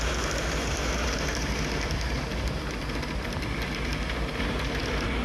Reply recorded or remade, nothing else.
recorded